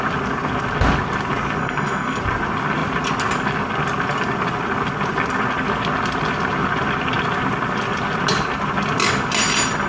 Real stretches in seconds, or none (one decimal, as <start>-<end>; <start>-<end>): 0.0-1.6; 2.2-9.9